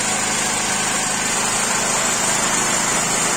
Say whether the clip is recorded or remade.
recorded